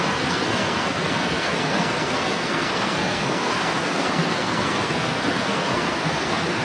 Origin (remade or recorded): remade